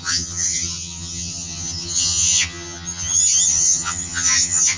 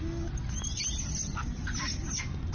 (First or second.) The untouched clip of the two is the second